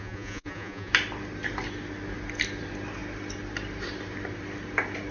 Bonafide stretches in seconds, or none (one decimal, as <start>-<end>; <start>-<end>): 0.9-5.1